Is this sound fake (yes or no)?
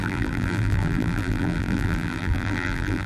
yes